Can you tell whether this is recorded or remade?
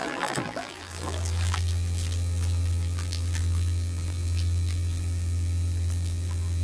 remade